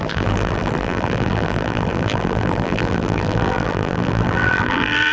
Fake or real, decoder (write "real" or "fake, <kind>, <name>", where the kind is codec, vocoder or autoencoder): fake, vocoder, BigVGAN v2